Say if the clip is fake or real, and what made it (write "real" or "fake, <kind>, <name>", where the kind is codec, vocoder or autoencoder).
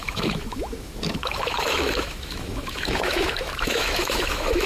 fake, autoencoder, DAC-VAE